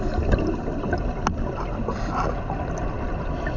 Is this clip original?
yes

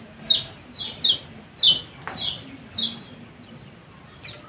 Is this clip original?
yes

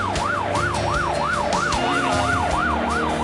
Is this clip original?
yes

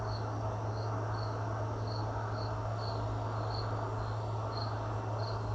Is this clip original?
yes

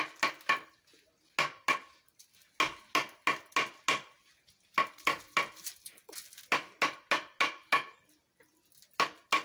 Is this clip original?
yes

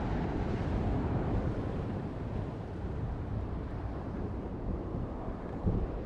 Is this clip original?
no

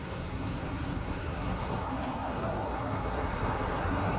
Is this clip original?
no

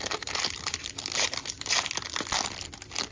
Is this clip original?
yes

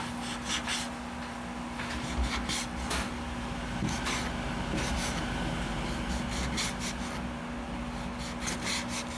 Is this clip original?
yes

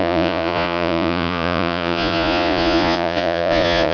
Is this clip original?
no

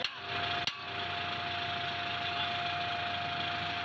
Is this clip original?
yes